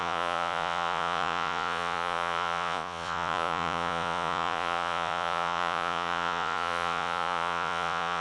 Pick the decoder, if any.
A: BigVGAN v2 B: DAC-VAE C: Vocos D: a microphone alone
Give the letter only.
C